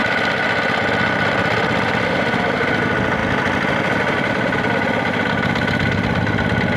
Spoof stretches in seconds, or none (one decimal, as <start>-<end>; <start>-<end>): none